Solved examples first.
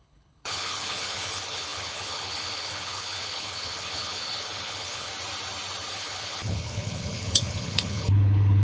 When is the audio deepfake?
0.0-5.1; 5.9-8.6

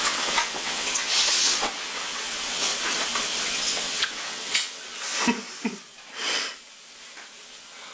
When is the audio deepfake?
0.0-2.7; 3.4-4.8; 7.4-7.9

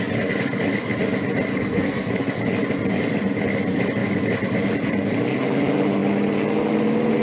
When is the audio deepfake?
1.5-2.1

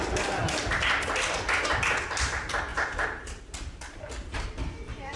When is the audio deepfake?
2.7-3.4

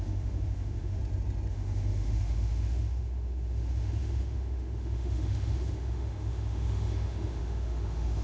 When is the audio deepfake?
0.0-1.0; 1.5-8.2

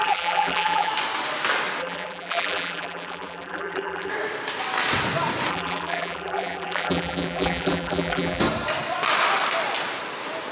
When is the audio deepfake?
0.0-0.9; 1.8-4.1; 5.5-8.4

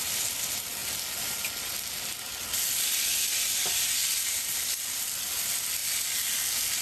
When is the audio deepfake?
none